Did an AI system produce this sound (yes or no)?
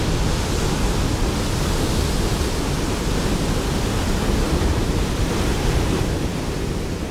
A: no